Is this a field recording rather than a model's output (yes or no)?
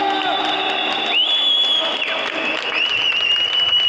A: yes